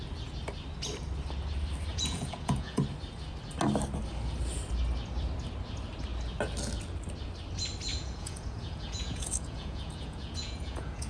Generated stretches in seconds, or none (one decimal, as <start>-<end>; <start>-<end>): 1.9-2.8; 7.9-11.1